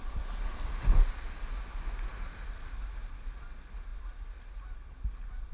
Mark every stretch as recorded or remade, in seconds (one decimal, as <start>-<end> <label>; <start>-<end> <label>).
0.0-5.5 recorded